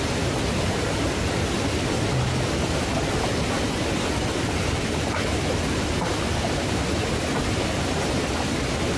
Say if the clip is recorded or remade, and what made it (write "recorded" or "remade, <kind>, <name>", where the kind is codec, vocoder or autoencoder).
recorded